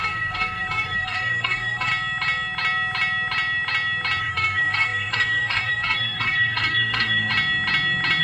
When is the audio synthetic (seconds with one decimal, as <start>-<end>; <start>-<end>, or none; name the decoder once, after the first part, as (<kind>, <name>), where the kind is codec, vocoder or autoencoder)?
0.0-1.9 (codec, SNAC); 4.2-7.3